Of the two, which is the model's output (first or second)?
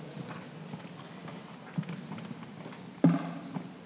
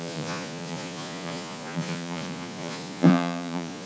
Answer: second